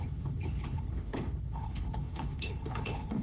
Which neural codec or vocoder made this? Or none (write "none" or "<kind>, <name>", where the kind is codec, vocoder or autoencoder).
codec, HILCodec